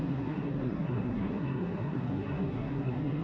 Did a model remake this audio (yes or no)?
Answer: yes